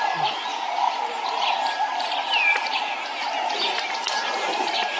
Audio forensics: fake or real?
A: real